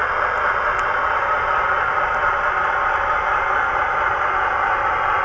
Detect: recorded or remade recorded